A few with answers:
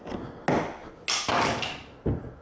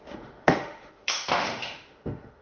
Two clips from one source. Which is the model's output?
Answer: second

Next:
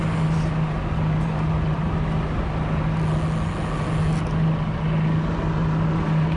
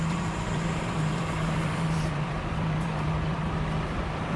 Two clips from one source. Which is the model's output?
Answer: second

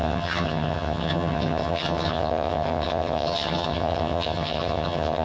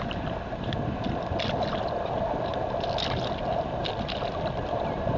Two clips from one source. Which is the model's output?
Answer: first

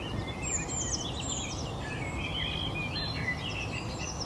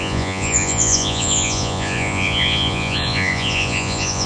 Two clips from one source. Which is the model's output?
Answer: second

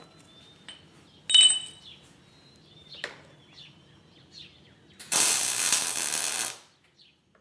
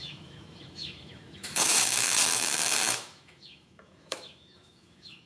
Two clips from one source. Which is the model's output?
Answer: second